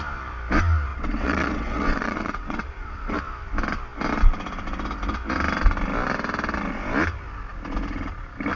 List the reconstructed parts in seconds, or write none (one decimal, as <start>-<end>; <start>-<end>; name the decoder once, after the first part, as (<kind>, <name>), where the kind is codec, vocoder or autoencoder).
0.9-3.2 (vocoder, WaveNeXt)

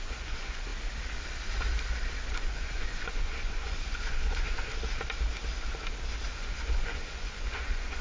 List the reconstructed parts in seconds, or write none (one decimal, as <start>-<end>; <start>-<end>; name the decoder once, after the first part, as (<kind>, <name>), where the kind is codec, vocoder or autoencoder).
0.0-0.7 (vocoder, Vocos); 2.3-4.7; 6.3-8.0

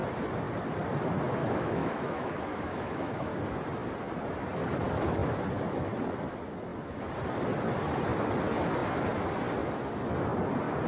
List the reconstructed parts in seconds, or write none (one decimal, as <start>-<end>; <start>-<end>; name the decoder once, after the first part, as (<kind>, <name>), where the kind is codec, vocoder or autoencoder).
1.4-3.4 (autoencoder, DAC-VAE)

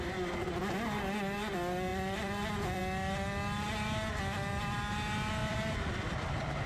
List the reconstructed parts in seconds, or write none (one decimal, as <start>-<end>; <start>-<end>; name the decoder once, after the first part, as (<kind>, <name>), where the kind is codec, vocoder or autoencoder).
1.9-2.8 (vocoder, BigVGAN v2); 5.4-6.7